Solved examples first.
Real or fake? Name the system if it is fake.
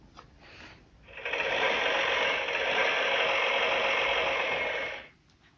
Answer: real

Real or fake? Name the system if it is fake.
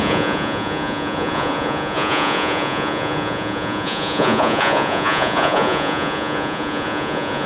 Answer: fake, vocoder, Vocos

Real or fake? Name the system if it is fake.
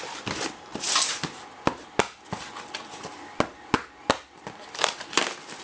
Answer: real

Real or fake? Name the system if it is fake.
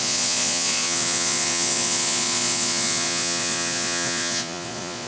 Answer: fake, vocoder, Vocos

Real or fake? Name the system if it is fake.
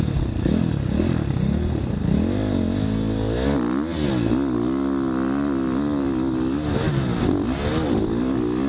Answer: real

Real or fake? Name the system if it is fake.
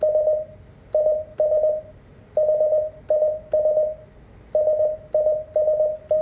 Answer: real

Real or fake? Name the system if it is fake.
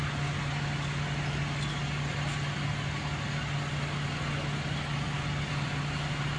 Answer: real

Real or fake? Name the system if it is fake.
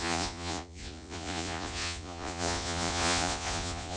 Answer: fake, vocoder, Vocos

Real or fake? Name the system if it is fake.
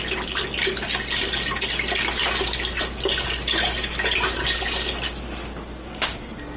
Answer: real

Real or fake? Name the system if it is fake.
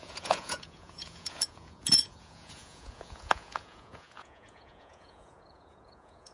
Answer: fake, vocoder, Vocos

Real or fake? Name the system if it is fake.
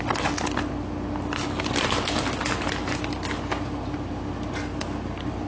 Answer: real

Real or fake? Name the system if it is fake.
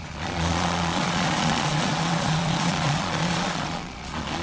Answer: fake, vocoder, Vocos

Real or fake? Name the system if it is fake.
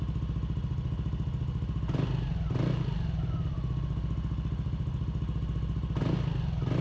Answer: real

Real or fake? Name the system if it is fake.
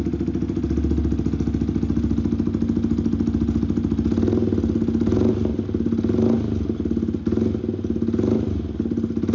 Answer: real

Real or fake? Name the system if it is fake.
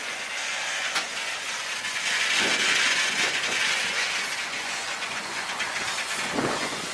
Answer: fake, vocoder, Vocos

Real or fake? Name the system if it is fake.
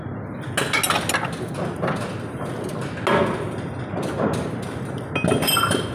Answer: real